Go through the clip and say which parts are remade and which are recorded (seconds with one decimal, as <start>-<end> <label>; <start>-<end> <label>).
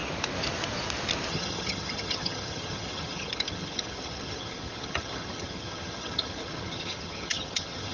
0.0-1.3 recorded; 1.3-7.9 remade